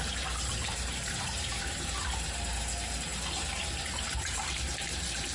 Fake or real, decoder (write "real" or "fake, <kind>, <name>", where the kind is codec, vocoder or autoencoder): fake, vocoder, BigVGAN v2